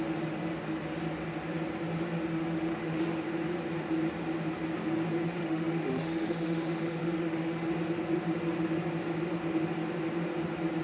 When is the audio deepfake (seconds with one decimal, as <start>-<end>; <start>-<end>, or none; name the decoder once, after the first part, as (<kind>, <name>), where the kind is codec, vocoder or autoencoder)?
2.3-3.0 (autoencoder, DAC-VAE); 5.4-7.7